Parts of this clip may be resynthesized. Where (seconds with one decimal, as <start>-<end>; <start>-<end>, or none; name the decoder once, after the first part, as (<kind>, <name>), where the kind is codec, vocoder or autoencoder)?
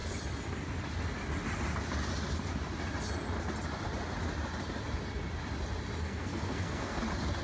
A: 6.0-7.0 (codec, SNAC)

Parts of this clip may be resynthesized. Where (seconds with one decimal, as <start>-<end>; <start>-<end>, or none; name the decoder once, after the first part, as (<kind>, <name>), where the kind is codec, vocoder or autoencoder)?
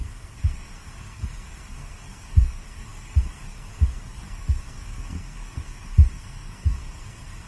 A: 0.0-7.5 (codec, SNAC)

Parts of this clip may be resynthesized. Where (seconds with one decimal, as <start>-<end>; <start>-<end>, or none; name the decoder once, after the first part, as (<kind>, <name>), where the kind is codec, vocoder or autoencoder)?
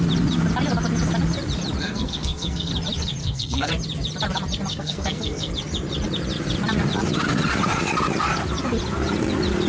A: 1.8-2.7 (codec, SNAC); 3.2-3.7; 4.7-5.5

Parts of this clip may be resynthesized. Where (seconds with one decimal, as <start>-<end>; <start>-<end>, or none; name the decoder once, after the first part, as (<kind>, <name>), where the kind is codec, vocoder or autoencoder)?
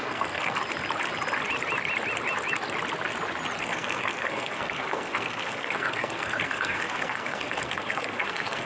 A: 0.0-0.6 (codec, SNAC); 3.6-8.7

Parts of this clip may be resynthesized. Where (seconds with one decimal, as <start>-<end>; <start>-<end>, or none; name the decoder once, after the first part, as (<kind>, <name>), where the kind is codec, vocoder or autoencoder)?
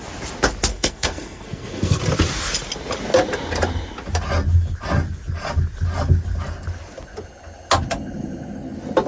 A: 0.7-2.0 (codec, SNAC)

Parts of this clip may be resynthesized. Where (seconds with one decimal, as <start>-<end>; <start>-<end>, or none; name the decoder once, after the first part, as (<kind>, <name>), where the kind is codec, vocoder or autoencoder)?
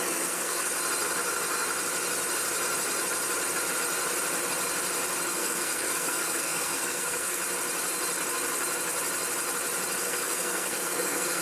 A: 0.0-0.7 (codec, SNAC); 5.3-7.4; 10.0-11.4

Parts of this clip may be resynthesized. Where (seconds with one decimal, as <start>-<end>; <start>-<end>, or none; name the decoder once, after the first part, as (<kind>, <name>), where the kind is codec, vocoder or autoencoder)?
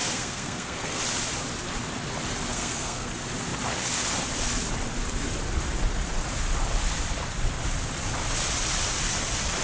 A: 0.0-1.0 (codec, SNAC); 2.5-3.1